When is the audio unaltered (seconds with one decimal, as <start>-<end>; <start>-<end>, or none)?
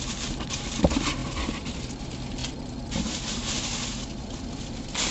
0.0-5.1